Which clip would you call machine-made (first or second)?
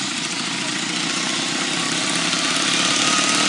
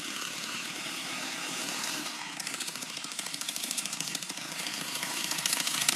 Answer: second